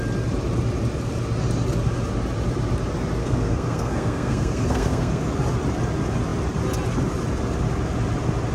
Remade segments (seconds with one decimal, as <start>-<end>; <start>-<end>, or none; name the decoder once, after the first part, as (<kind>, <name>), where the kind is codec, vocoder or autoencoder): 3.2-5.2 (codec, SNAC)